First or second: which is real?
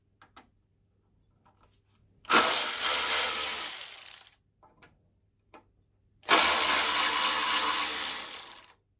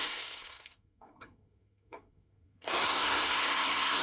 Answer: first